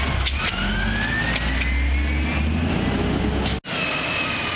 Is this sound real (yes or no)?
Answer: yes